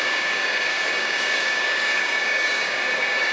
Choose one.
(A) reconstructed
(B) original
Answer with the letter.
A